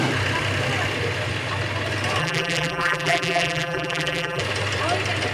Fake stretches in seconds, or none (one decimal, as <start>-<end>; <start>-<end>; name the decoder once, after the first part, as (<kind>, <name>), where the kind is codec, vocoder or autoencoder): 2.2-4.4 (vocoder, BigVGAN v2)

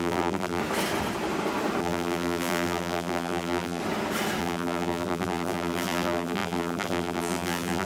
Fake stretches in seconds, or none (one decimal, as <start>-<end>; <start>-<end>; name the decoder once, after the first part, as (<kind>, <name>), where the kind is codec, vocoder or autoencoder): 0.0-0.6 (vocoder, BigVGAN v2); 1.8-3.8; 4.4-7.8

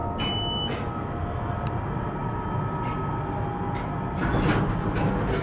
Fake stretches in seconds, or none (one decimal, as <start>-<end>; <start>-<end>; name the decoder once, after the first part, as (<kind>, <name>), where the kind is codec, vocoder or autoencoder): none

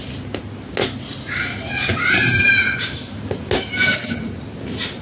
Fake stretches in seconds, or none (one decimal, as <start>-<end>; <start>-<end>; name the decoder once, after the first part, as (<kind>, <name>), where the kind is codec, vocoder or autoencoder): 1.9-3.5 (vocoder, BigVGAN v2)

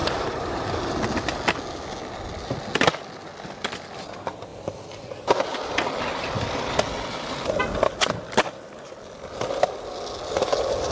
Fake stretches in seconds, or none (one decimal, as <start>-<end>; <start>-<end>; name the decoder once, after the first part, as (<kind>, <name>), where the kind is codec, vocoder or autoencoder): 0.0-0.9 (vocoder, BigVGAN v2)

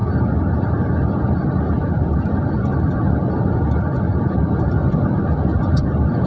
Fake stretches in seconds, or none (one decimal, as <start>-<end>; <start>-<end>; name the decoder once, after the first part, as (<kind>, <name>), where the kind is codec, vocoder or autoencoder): 0.0-6.3 (vocoder, BigVGAN v2)